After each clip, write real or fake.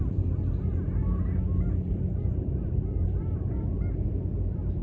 real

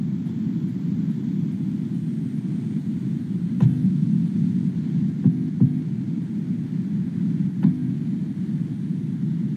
real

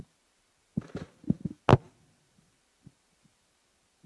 real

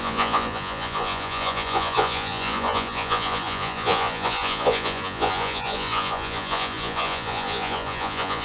fake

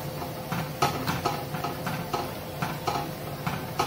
real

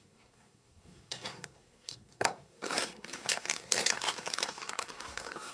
fake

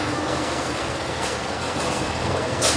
fake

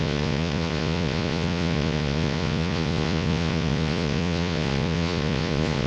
fake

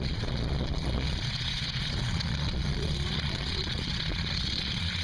fake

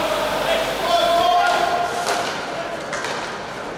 real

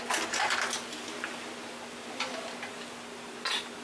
real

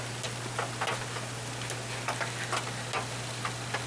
real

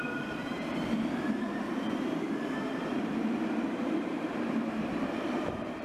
fake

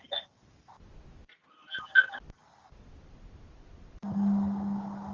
real